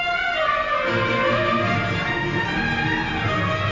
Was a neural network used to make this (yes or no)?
no